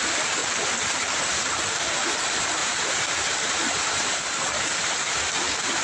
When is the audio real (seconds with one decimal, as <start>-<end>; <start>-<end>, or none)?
0.0-2.6; 4.8-5.8